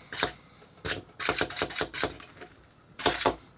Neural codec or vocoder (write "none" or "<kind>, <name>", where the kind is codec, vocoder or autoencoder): none